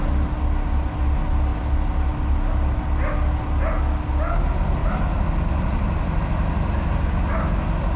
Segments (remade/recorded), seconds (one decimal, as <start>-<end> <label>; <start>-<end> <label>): 0.0-4.8 recorded; 4.8-6.2 remade; 6.2-8.0 recorded